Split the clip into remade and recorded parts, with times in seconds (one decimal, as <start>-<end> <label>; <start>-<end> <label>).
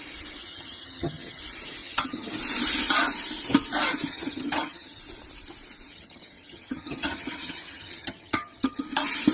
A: 0.0-0.4 recorded; 0.4-1.4 remade; 1.4-1.8 recorded; 1.8-2.4 remade; 2.4-4.1 recorded; 4.1-5.0 remade; 5.0-5.9 recorded; 5.9-8.8 remade; 8.8-9.3 recorded